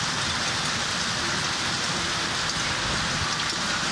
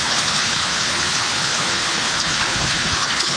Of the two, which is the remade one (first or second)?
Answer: second